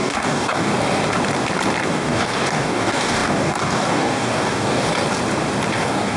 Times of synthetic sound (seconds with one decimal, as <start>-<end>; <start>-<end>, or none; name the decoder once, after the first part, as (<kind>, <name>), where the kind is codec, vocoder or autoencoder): 0.0-0.7 (codec, DAC); 1.9-4.9; 5.7-6.2